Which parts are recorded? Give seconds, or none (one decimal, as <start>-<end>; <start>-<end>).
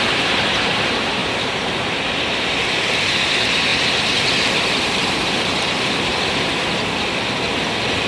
3.7-4.7; 6.1-8.1